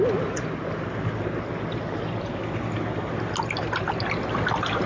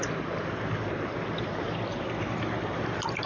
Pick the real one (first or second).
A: first